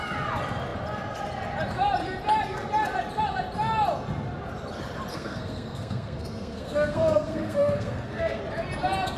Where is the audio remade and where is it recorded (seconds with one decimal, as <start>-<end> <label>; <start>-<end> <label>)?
0.0-5.1 recorded; 5.1-8.4 remade; 8.4-9.2 recorded